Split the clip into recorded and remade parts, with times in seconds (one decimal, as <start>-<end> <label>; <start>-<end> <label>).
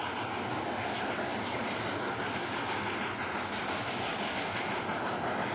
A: 0.0-5.5 recorded